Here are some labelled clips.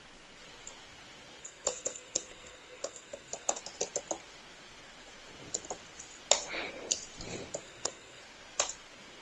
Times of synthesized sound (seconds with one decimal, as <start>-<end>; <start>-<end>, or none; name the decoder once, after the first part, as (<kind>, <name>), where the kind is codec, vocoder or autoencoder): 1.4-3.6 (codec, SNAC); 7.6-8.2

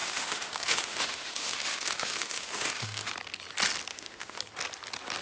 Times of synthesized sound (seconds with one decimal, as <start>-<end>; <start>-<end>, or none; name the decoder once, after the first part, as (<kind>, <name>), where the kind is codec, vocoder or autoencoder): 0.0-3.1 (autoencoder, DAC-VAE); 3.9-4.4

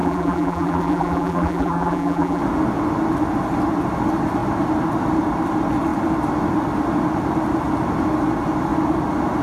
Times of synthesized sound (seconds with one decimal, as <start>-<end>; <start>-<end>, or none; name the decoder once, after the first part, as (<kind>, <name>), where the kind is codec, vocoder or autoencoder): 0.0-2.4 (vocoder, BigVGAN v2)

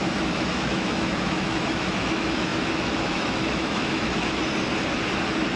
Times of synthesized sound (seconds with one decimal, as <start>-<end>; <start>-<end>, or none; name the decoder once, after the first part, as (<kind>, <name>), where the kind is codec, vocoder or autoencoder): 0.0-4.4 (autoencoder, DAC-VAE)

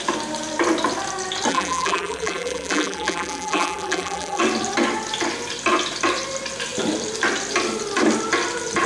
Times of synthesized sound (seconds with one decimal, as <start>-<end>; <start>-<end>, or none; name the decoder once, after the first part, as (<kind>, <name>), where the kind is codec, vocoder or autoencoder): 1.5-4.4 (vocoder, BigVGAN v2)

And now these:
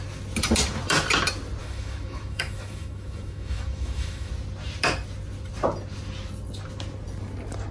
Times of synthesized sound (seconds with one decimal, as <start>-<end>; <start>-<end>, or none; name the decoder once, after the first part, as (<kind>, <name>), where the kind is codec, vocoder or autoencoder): 1.6-4.3 (autoencoder, DAC-VAE)